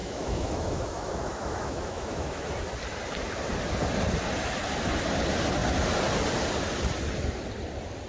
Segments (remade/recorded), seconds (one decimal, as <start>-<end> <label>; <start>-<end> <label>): 0.0-2.5 remade; 2.5-8.1 recorded